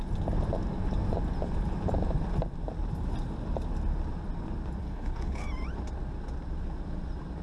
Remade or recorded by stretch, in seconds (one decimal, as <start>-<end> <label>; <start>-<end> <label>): 0.0-4.8 recorded; 4.8-5.4 remade; 5.4-7.4 recorded

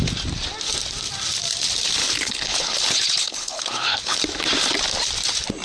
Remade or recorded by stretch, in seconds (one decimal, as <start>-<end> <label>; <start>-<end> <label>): 0.0-2.0 recorded; 2.0-4.2 remade; 4.2-5.6 recorded

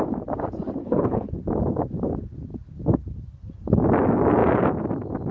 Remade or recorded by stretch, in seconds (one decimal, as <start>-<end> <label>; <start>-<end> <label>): 0.0-0.8 recorded; 0.8-1.3 remade; 1.3-5.3 recorded